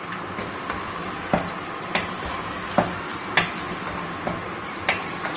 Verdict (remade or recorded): recorded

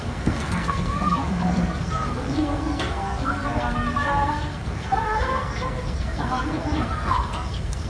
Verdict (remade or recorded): remade